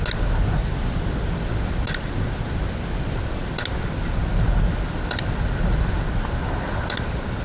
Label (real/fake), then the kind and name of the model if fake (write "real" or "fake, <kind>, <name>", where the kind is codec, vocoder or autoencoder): real